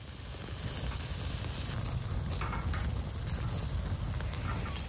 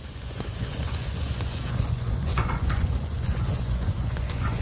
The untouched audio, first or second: first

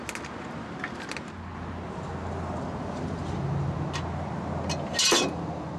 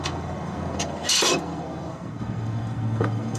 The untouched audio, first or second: first